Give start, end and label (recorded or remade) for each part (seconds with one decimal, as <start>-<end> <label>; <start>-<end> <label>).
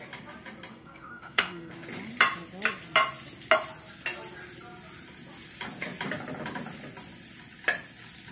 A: 0.0-0.7 recorded; 0.7-1.7 remade; 1.7-8.3 recorded